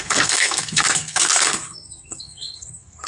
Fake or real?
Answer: fake